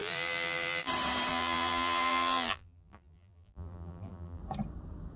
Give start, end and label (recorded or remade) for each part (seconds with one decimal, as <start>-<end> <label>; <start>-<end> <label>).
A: 0.0-0.9 remade; 0.9-1.3 recorded; 1.3-4.4 remade; 4.4-5.2 recorded